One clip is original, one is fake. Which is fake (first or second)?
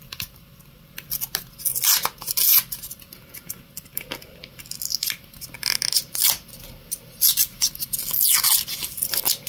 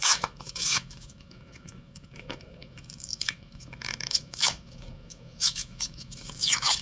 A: second